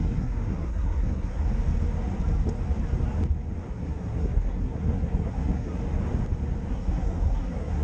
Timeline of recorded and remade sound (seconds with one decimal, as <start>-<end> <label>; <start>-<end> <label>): 0.0-1.5 remade; 1.5-3.7 recorded; 3.7-5.8 remade; 5.8-6.7 recorded; 6.7-7.8 remade